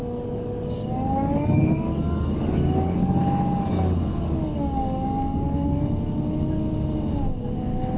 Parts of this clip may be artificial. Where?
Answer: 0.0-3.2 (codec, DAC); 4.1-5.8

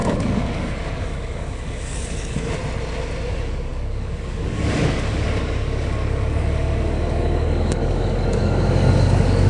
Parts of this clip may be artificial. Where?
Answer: 0.0-2.6 (codec, DAC); 3.3-9.5

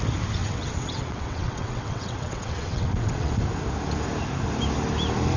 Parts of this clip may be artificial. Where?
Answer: 0.4-3.4 (vocoder, WaveNeXt)

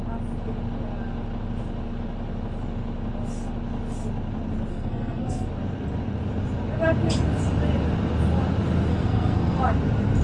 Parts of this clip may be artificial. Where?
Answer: 4.7-5.5 (codec, SNAC); 8.9-9.6

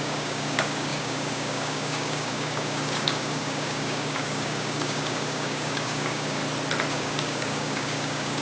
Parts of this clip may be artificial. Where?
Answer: 0.0-6.4 (codec, DAC); 6.9-8.4

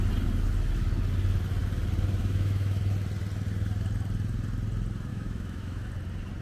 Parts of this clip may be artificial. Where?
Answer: 2.2-2.8 (autoencoder, DAC-VAE); 5.1-5.9

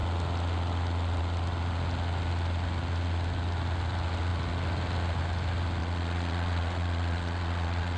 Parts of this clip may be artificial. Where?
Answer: 5.8-8.0 (vocoder, Vocos)

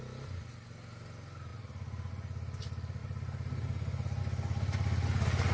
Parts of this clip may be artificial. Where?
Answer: none